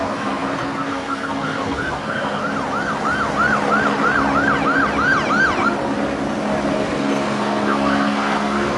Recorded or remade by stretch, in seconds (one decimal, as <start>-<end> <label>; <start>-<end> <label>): 0.0-2.4 remade; 2.4-6.7 recorded; 6.7-8.8 remade